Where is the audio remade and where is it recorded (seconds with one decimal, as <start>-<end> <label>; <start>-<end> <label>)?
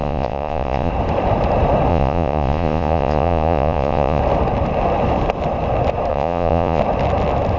0.0-0.9 remade; 0.9-1.9 recorded; 1.9-4.2 remade; 4.2-6.1 recorded; 6.1-6.8 remade; 6.8-7.6 recorded